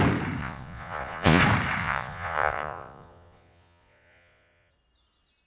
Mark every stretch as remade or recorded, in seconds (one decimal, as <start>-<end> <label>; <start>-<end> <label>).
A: 0.0-0.4 recorded; 0.4-1.4 remade; 1.4-1.8 recorded; 1.8-4.7 remade; 4.7-5.5 recorded